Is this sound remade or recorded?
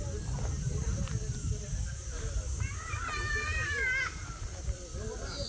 recorded